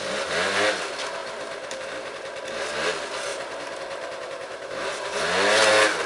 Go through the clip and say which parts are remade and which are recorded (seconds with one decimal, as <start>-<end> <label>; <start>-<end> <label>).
0.0-1.2 recorded; 1.2-2.4 remade; 2.4-3.3 recorded; 3.3-5.2 remade; 5.2-6.1 recorded